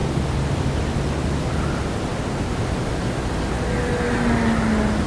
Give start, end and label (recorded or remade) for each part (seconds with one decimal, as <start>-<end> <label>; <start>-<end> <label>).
0.0-5.1 recorded